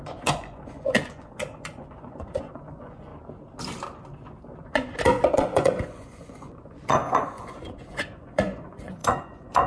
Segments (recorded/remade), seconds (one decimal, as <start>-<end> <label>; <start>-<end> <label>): 0.0-3.1 remade; 3.1-4.6 recorded; 4.6-9.7 remade